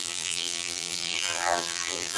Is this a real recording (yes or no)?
no